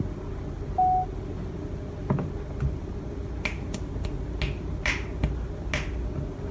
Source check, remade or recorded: recorded